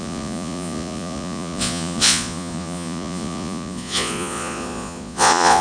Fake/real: fake